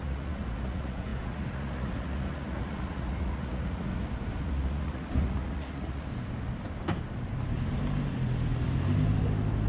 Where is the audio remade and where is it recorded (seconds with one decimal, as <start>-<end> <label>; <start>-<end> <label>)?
0.0-3.9 remade; 3.9-4.4 recorded; 4.4-6.1 remade; 6.1-9.7 recorded